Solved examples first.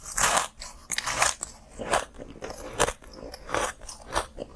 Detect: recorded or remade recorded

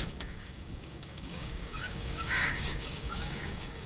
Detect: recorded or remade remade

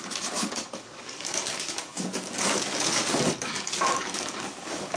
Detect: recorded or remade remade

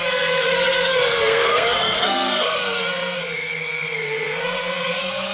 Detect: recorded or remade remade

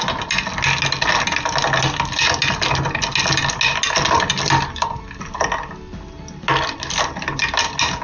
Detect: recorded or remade recorded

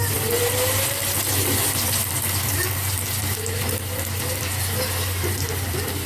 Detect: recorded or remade recorded